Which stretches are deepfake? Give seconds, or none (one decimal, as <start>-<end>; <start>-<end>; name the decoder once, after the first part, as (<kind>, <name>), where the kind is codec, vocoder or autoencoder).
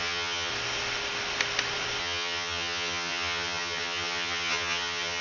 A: 0.0-0.5 (vocoder, HiFi-GAN); 2.0-5.2